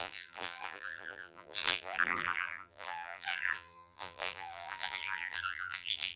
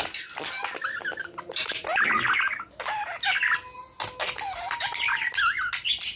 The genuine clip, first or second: second